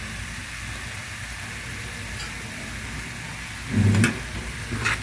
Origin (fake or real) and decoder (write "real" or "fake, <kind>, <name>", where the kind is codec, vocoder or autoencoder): real